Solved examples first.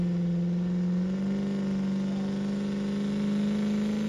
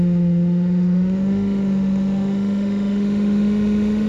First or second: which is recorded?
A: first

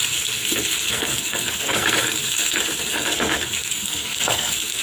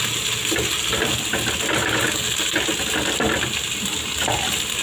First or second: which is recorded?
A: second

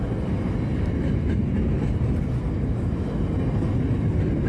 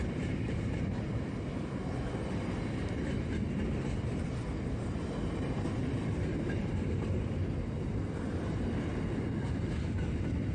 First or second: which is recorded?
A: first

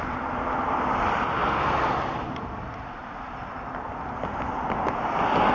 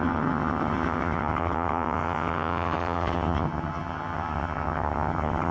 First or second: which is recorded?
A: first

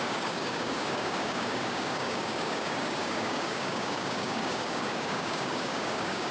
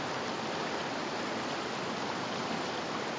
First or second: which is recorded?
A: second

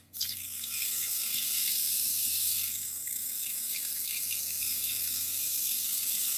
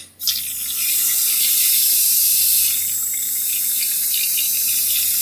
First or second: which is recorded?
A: second